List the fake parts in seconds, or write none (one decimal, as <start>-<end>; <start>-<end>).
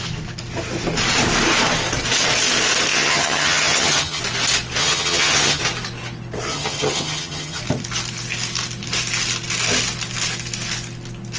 2.9-4.2; 4.8-5.6; 6.5-7.6